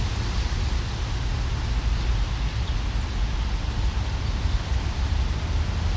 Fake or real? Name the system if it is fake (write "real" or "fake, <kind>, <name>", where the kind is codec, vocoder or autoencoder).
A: real